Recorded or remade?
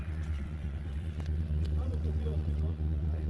remade